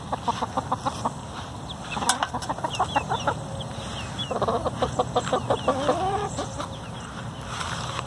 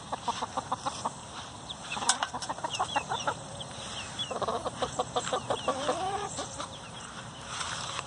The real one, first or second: first